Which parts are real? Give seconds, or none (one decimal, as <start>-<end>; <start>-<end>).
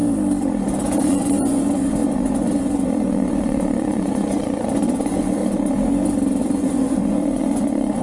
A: 0.0-1.1; 5.4-6.4